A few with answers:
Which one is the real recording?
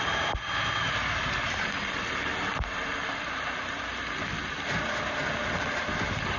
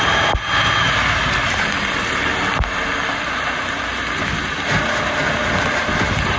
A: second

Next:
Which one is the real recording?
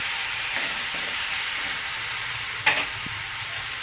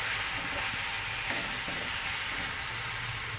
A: second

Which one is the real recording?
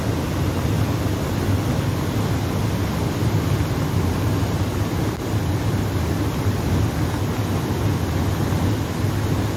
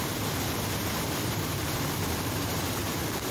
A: first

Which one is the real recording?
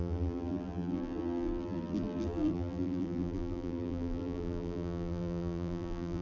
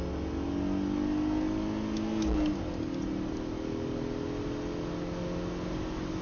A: second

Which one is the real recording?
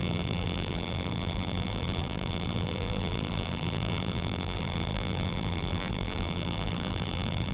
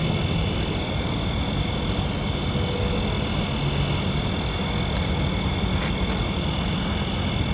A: second